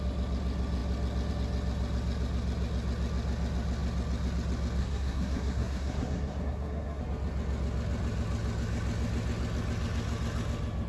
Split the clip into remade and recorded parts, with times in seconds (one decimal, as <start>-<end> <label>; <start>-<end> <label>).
0.0-4.8 recorded; 4.8-7.0 remade; 7.0-10.9 recorded